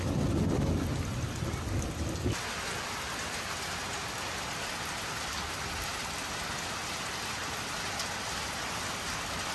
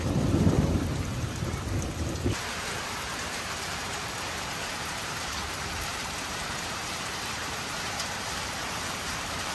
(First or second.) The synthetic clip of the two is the second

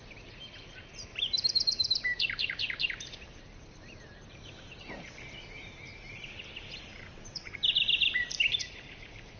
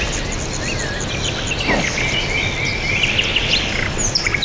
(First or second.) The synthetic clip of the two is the first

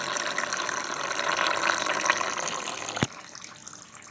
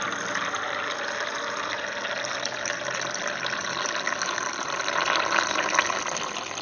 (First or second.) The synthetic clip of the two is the first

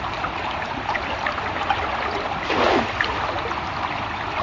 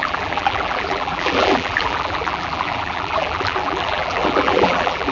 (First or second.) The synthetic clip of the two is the second